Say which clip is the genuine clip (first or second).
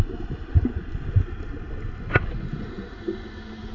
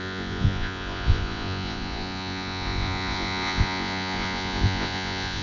first